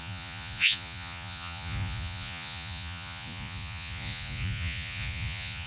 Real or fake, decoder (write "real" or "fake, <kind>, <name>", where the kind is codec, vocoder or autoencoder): fake, vocoder, Vocos